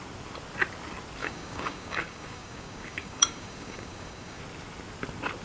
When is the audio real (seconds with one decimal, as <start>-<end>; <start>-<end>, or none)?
0.0-1.2; 4.4-5.4